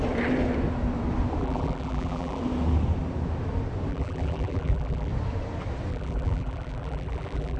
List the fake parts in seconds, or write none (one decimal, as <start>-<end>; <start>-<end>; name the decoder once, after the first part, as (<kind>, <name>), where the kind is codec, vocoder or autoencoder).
1.4-2.4 (vocoder, BigVGAN v2); 3.9-5.1; 5.9-7.6